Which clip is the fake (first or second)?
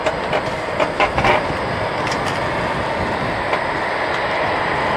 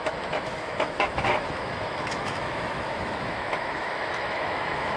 second